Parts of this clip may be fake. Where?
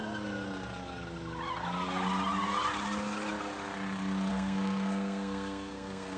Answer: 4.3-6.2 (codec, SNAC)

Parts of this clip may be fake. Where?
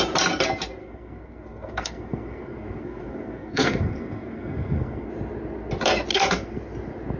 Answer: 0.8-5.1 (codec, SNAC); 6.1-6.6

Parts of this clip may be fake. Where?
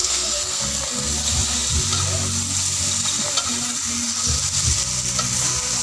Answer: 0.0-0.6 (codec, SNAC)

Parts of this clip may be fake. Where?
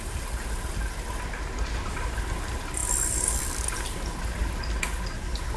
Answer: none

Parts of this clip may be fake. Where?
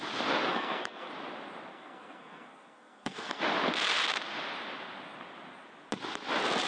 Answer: 0.5-1.1 (codec, SNAC); 1.7-3.4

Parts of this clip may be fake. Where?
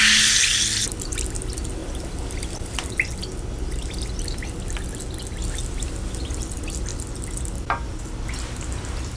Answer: none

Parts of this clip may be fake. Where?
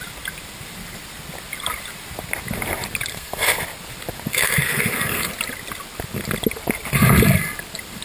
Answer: 3.1-3.6 (codec, SNAC); 4.3-5.3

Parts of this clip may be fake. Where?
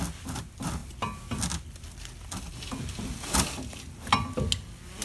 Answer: none